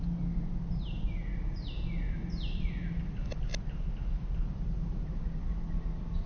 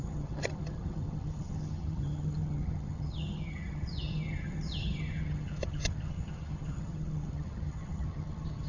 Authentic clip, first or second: first